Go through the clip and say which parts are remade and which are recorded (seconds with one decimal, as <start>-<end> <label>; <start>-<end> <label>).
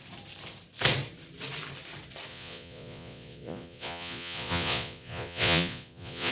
0.0-2.3 recorded; 2.3-6.3 remade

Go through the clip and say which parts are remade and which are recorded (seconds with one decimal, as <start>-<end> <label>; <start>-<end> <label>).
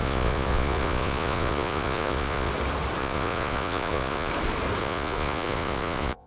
0.0-2.5 remade; 2.5-3.0 recorded; 3.0-4.3 remade; 4.3-4.8 recorded; 4.8-6.3 remade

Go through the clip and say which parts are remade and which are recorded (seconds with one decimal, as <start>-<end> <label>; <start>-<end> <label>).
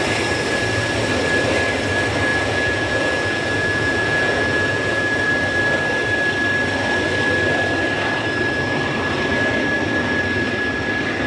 0.0-2.3 recorded; 2.3-5.2 remade; 5.2-11.3 recorded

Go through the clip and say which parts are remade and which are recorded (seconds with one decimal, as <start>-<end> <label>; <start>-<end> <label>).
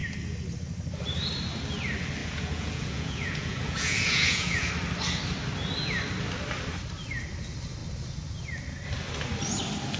0.0-2.2 recorded; 2.2-4.7 remade; 4.7-10.0 recorded